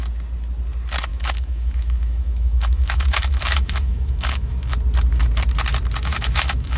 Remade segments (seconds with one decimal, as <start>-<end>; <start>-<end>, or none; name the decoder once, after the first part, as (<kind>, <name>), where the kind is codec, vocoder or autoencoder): 1.1-4.7 (autoencoder, DAC-VAE); 6.1-6.8